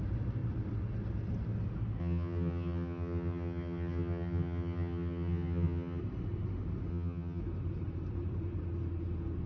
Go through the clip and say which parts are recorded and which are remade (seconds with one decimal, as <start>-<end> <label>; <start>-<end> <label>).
0.0-2.0 recorded; 2.0-6.0 remade; 6.0-6.9 recorded; 6.9-7.4 remade; 7.4-9.5 recorded